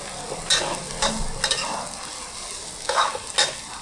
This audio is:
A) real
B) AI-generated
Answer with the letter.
A